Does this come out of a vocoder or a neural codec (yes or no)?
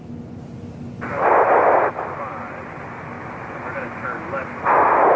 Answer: no